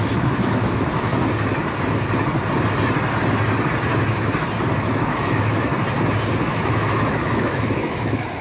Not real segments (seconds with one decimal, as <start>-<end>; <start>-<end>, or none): 0.0-1.1; 4.8-5.7; 6.5-8.4

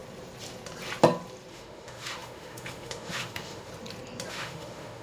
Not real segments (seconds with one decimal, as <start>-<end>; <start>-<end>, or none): 1.5-3.7; 4.3-5.0